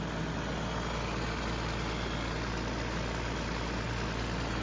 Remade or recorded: recorded